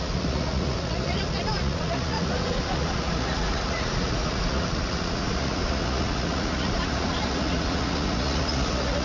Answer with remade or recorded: remade